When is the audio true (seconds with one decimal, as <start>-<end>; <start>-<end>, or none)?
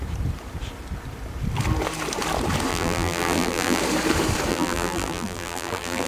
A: 0.0-2.7; 3.8-4.5